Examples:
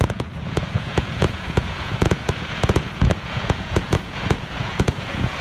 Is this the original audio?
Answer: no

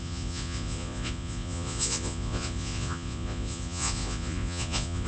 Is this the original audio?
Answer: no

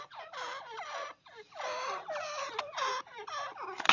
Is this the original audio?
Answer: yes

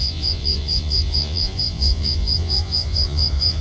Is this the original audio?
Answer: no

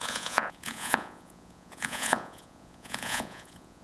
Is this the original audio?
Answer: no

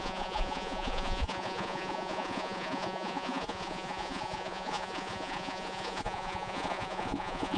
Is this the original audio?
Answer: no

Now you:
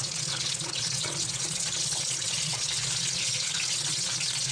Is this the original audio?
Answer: no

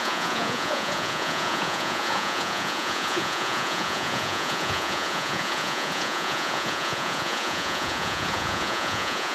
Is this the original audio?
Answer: no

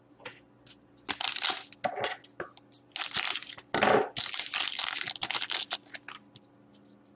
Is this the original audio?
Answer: yes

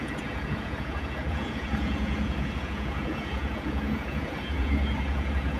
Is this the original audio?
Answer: no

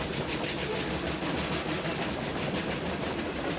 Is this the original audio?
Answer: yes